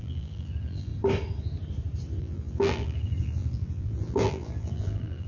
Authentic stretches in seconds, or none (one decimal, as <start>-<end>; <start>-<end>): 0.9-2.2